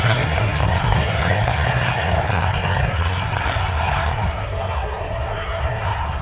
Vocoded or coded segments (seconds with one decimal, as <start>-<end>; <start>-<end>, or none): 0.0-6.2